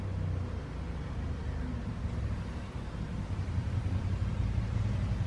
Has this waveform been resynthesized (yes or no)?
no